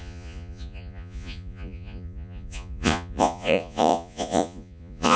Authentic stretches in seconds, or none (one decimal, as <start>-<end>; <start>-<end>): none